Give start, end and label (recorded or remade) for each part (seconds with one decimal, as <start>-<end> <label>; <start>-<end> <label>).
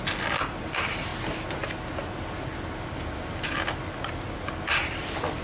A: 0.0-5.4 recorded